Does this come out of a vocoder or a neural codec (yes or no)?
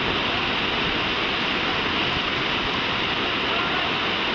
no